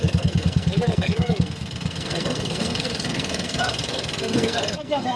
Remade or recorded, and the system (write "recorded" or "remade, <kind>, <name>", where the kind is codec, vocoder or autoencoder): remade, codec, SNAC